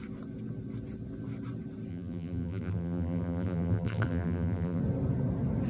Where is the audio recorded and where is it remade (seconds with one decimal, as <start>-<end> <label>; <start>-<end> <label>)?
0.0-1.9 recorded; 1.9-4.8 remade; 4.8-5.7 recorded